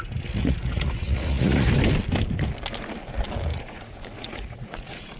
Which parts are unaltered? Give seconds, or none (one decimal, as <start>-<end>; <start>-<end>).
0.0-0.4; 1.7-3.5